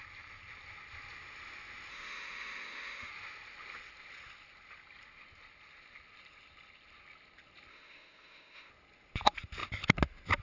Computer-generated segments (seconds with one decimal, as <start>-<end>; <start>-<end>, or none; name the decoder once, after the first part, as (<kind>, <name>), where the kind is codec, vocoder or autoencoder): 1.9-3.1 (autoencoder, DAC-VAE); 7.7-8.7